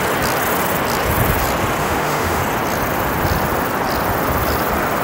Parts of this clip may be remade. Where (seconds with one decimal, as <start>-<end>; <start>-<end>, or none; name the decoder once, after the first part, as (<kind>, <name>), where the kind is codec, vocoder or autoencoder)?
1.8-2.4 (autoencoder, DAC-VAE)